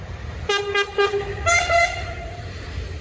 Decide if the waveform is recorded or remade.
remade